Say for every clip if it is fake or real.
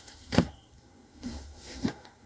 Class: fake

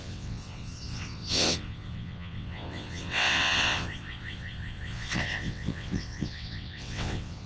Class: fake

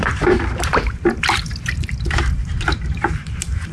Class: fake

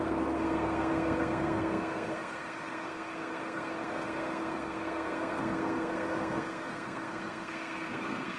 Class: fake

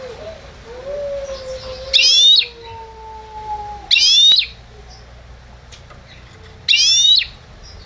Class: real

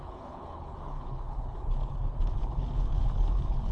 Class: fake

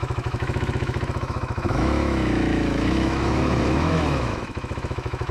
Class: fake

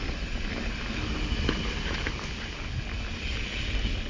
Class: real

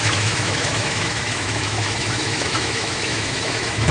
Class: fake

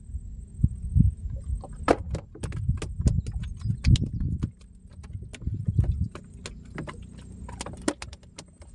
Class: real